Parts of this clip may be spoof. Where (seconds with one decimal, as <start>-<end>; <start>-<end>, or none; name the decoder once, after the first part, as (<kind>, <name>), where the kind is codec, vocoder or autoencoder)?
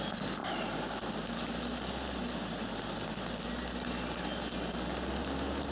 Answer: none